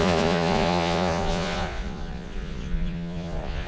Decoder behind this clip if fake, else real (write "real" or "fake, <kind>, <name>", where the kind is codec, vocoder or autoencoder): fake, vocoder, Vocos